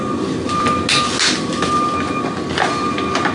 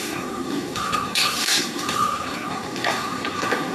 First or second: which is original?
first